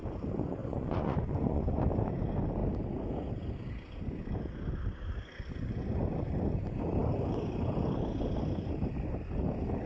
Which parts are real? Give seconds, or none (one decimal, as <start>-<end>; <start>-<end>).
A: 0.0-0.6; 1.8-9.9